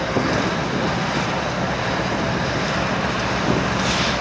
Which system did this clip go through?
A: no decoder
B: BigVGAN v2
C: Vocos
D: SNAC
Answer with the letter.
A